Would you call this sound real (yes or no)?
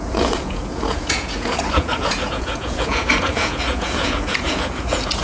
no